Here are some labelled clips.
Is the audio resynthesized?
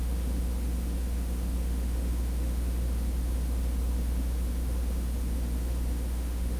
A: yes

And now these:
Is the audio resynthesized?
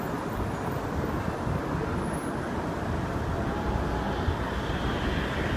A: no